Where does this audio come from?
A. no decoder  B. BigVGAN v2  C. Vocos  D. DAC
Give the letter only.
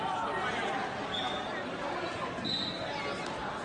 A